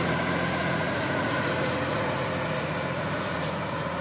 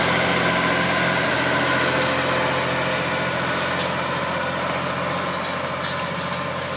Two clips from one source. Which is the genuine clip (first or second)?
second